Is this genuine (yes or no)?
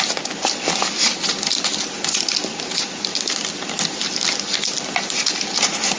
yes